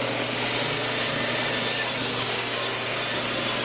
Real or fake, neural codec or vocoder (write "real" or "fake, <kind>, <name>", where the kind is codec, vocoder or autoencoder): real